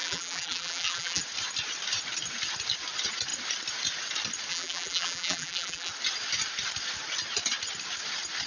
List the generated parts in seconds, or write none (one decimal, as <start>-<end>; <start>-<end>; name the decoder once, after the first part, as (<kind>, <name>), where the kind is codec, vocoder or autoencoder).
0.0-1.2 (vocoder, BigVGAN v2); 4.5-5.9